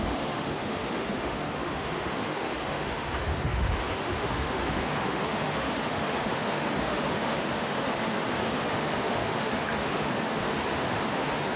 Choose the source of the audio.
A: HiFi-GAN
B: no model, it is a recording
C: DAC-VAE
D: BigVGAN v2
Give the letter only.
C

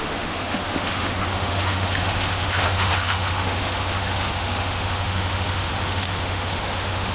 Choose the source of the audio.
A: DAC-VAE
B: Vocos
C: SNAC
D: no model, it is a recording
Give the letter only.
A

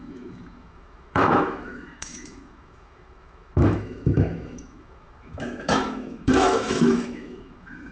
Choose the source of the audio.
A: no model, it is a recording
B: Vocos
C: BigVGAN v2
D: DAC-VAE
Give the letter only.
D